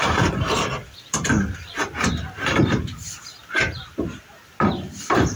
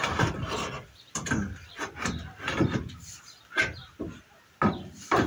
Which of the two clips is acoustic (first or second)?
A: second